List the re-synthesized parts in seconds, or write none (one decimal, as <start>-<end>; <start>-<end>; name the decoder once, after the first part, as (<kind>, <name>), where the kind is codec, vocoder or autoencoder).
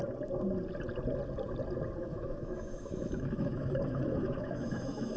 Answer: 2.0-5.2 (autoencoder, DAC-VAE)